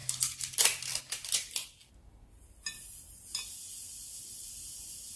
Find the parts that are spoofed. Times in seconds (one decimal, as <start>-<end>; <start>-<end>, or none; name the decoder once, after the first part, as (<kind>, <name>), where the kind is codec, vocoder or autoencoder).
0.0-1.0 (vocoder, BigVGAN v2)

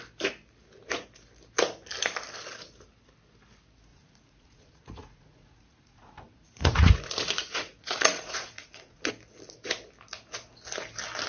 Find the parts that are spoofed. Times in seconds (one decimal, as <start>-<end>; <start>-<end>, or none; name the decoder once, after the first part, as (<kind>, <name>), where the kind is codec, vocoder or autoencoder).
3.9-9.1 (vocoder, Vocos)

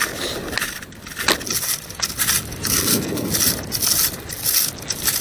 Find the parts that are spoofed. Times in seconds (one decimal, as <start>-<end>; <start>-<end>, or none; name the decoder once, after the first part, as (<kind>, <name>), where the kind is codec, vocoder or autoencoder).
2.6-3.3 (codec, SNAC)

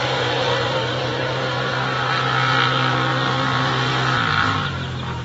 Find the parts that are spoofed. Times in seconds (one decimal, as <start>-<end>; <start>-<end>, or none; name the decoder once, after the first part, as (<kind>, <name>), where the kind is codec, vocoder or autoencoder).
0.8-1.3 (codec, DAC)

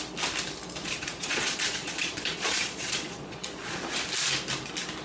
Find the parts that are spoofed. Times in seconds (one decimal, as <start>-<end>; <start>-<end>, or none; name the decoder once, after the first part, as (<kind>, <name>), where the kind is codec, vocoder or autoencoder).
0.8-3.8 (vocoder, Vocos)

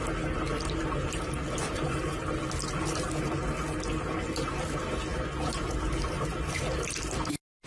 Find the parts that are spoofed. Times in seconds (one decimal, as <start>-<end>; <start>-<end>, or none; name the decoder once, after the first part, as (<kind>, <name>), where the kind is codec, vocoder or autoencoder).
none